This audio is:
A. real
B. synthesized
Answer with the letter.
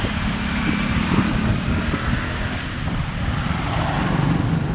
A